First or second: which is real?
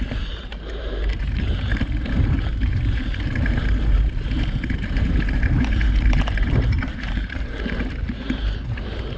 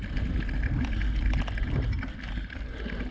second